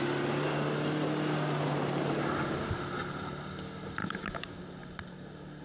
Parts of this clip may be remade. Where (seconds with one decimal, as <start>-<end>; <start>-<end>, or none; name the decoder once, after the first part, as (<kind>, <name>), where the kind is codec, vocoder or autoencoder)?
4.0-4.6 (autoencoder, DAC-VAE)